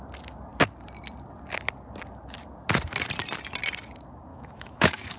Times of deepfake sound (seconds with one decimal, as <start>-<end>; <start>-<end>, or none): 4.3-5.2